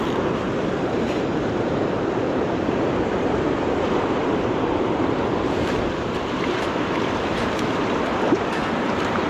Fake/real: fake